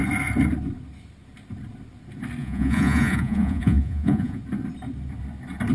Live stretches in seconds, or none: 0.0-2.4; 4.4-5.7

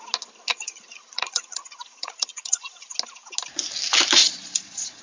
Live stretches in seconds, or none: 0.0-0.5; 2.9-4.2

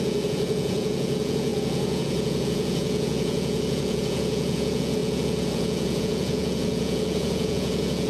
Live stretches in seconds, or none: none

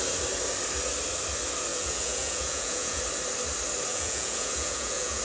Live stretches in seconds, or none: 0.0-1.7; 3.0-3.9

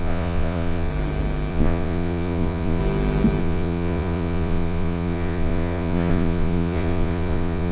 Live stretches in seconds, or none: 0.9-1.5; 2.8-3.4